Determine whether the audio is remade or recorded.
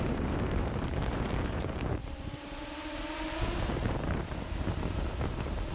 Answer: remade